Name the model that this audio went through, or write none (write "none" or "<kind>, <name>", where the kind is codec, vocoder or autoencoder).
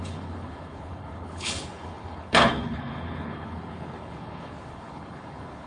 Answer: codec, HILCodec